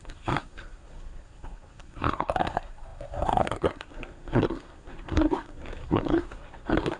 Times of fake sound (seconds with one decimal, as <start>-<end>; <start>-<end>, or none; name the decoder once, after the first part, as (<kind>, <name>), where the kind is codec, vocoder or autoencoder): 0.0-7.0 (codec, SNAC)